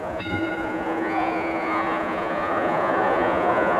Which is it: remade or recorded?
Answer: remade